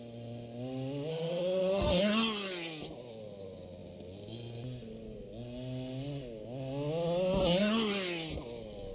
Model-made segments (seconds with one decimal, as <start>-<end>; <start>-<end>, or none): 1.1-2.0